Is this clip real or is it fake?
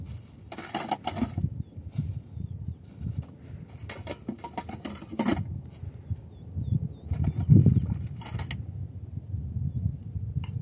real